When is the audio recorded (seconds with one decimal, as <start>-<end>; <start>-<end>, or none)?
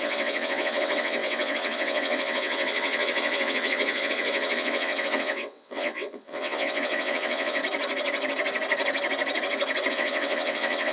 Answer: 7.6-9.9